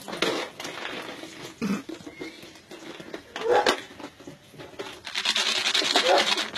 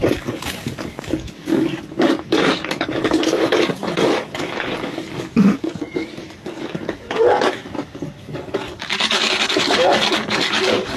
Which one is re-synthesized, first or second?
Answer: second